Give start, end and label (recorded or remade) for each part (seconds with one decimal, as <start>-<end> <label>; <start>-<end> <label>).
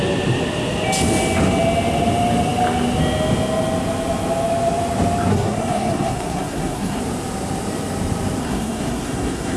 0.0-5.3 recorded; 5.3-7.0 remade; 7.0-8.4 recorded; 8.4-9.6 remade